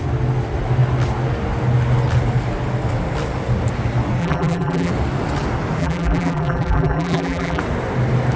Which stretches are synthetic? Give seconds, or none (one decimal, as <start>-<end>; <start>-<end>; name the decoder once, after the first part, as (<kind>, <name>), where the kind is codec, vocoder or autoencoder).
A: 4.2-4.9 (vocoder, BigVGAN v2); 5.8-7.6